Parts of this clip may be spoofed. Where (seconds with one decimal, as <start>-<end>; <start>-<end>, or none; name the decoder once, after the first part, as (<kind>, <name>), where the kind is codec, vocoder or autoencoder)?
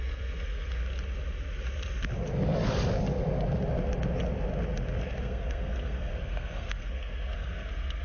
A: 0.0-0.8 (codec, SNAC); 5.2-8.0